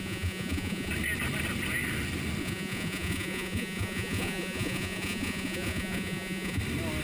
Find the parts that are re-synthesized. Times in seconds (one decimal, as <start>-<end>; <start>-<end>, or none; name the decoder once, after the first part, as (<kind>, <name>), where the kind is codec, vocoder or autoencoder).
0.0-0.9 (vocoder, Vocos); 2.4-6.6